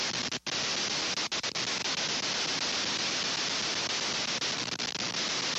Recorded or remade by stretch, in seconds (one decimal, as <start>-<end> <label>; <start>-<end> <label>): 0.0-5.6 recorded